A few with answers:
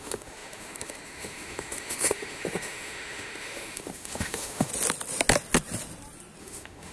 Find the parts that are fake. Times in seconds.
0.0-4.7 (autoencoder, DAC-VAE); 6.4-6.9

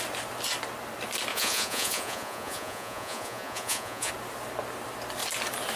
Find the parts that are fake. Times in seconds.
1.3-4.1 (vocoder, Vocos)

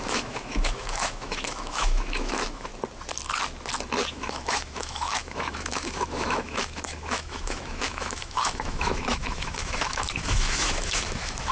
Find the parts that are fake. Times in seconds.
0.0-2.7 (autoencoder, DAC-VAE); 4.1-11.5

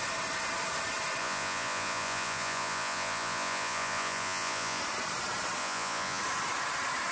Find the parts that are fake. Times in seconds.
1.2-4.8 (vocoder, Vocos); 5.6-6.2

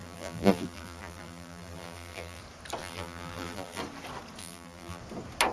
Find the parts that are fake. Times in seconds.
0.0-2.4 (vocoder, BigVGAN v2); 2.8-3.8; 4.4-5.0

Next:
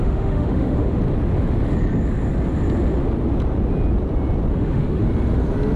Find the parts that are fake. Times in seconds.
0.0-1.0 (autoencoder, DAC-VAE); 4.5-5.0

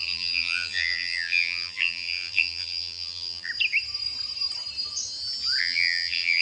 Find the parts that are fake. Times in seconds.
0.0-3.5 (vocoder, BigVGAN v2); 5.6-6.4